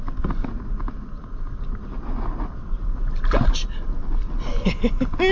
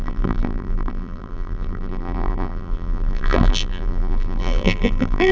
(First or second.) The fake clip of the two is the second